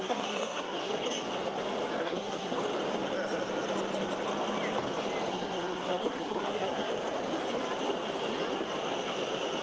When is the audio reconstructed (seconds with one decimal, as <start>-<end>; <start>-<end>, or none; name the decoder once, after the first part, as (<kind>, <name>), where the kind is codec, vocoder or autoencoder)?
0.0-0.9 (codec, SNAC); 2.0-2.6; 5.3-6.9